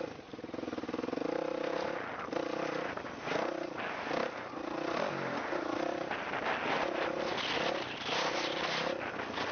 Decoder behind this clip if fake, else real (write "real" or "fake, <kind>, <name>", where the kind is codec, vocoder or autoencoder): real